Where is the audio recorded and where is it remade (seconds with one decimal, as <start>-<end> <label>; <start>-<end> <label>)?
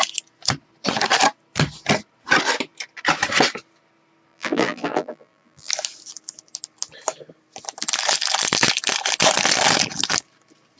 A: 0.0-4.3 recorded; 4.3-5.7 remade; 5.7-10.8 recorded